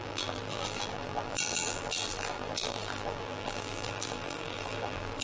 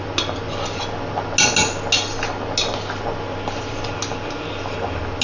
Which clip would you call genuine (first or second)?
second